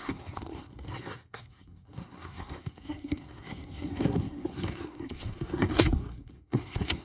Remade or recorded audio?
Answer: remade